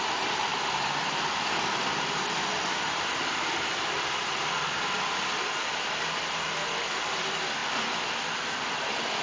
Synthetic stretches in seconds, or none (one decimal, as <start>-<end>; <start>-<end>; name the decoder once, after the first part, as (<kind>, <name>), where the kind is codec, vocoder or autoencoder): 0.5-4.7 (vocoder, BigVGAN v2); 7.6-9.2